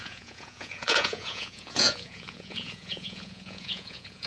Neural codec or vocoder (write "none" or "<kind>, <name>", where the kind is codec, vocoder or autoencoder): vocoder, Vocos